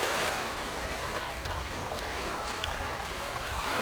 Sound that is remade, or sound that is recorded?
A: remade